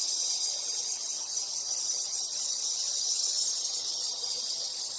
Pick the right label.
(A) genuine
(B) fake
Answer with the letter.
B